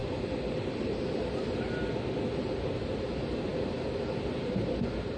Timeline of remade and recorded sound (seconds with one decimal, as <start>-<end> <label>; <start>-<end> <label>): 0.0-5.2 recorded